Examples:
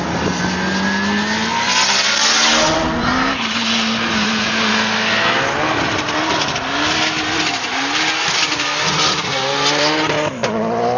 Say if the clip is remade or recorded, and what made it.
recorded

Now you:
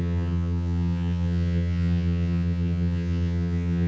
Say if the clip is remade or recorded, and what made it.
remade, vocoder, HiFi-GAN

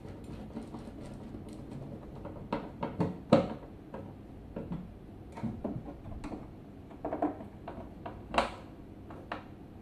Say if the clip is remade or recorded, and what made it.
recorded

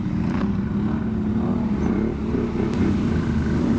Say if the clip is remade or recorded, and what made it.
recorded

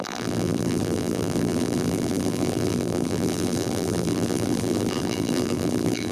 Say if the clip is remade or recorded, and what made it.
remade, vocoder, BigVGAN v2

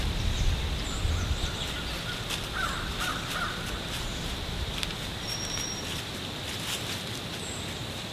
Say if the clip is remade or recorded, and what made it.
recorded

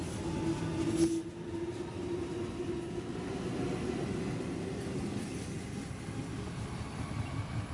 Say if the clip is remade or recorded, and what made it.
recorded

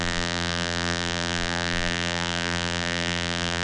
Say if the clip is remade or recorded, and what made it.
remade, vocoder, BigVGAN v2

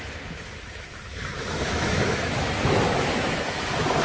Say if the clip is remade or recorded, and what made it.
remade, autoencoder, DAC-VAE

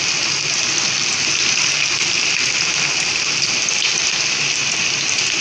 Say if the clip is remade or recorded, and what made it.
recorded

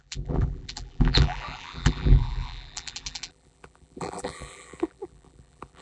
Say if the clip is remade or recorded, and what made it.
remade, vocoder, BigVGAN v2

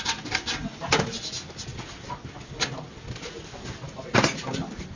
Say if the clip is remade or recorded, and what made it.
recorded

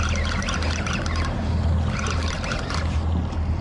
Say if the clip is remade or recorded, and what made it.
recorded